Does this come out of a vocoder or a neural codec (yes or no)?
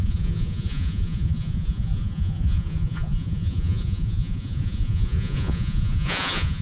yes